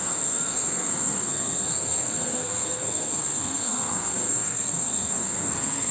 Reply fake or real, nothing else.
fake